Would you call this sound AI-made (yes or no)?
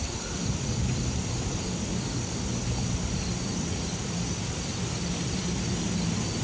yes